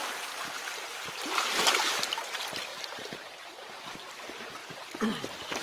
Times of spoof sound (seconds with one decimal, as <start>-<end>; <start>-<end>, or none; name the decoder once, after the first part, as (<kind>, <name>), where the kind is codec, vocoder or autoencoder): 2.7-3.7 (vocoder, BigVGAN v2)